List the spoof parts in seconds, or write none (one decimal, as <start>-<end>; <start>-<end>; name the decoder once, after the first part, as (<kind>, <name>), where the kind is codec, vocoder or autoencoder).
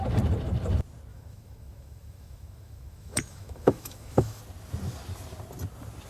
1.1-4.4 (autoencoder, DAC-VAE)